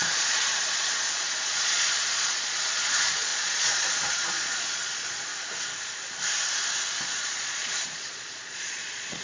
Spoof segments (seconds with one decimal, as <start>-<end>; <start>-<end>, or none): 0.0-5.3; 6.9-9.2